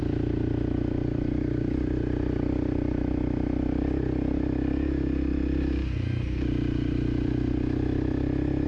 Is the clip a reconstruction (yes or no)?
no